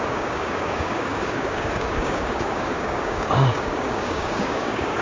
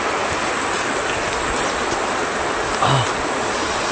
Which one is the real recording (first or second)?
second